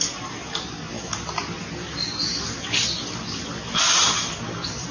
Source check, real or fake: real